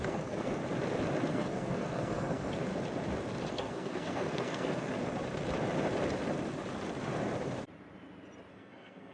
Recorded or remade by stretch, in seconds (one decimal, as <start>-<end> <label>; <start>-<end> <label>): 0.0-0.6 remade; 0.6-1.3 recorded; 1.3-2.7 remade; 2.7-3.5 recorded; 3.5-4.9 remade; 4.9-8.5 recorded; 8.5-9.1 remade